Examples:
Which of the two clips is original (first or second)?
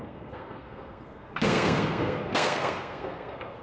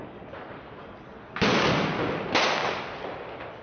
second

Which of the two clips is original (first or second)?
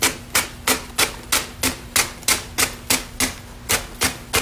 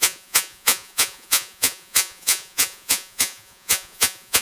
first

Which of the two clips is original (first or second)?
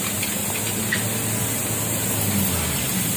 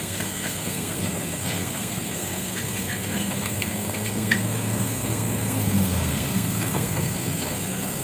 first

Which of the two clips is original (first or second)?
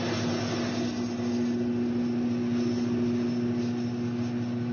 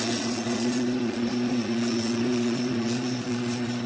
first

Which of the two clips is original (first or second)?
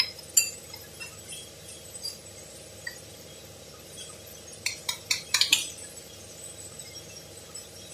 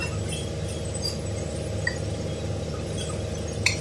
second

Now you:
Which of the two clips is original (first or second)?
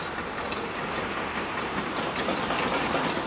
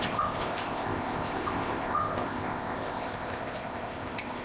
first